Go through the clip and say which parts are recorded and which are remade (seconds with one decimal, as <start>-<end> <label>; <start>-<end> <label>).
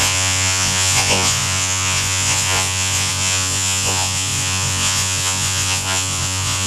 0.0-6.7 remade